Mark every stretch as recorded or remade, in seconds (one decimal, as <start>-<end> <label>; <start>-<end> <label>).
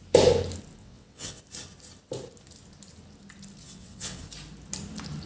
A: 0.0-0.8 recorded; 0.8-1.4 remade; 1.4-3.6 recorded; 3.6-4.2 remade; 4.2-5.3 recorded